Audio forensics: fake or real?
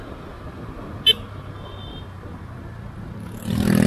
real